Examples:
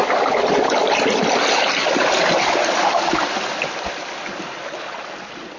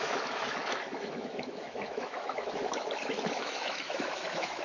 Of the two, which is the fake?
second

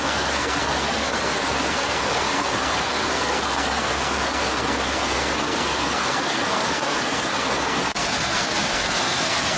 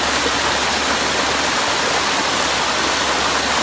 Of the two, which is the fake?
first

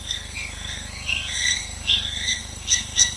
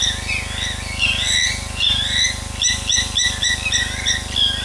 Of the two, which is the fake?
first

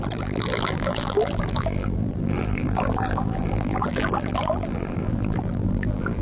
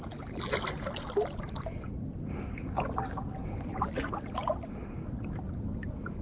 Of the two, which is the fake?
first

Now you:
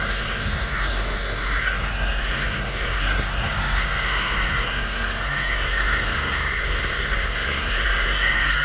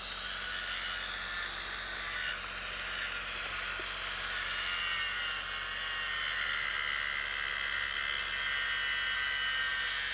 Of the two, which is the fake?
first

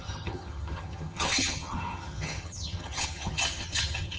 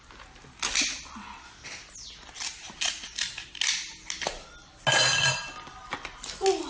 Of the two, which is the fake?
first